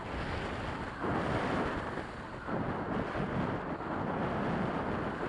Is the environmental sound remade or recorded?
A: recorded